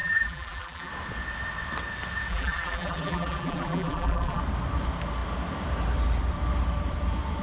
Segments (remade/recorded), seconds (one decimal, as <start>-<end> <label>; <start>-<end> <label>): 0.0-0.9 remade; 0.9-2.3 recorded; 2.3-4.4 remade; 4.4-7.4 recorded